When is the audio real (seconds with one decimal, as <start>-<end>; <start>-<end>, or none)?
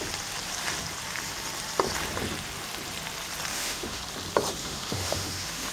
0.0-3.5; 4.0-4.6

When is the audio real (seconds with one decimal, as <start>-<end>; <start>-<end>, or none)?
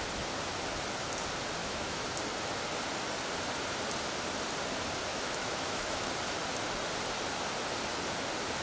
0.0-1.6; 2.1-5.1; 6.1-8.6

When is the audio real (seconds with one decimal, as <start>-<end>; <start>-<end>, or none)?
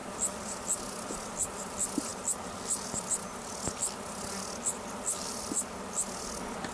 0.0-6.7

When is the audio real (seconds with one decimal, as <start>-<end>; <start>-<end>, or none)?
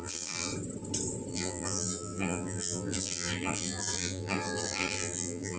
0.5-1.3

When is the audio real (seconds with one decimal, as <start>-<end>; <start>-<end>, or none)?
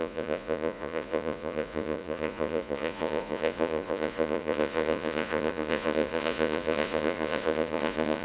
none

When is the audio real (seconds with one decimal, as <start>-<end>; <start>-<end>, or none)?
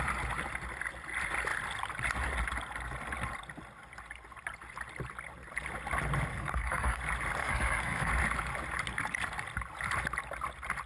0.0-6.3; 7.0-7.4; 8.1-10.9